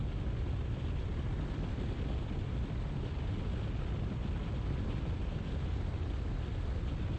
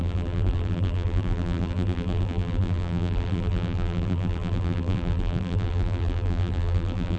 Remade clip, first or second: second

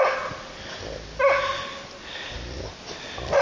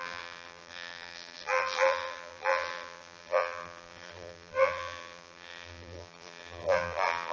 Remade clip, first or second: second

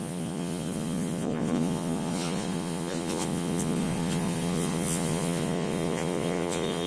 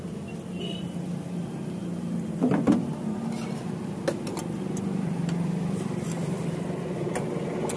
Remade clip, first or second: first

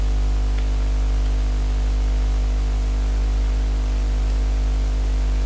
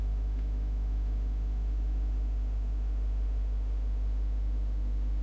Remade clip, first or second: second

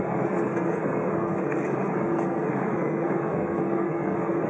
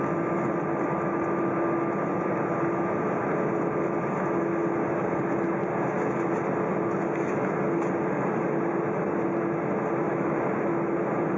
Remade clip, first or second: first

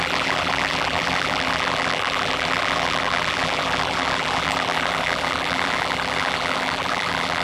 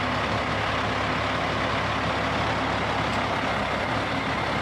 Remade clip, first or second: first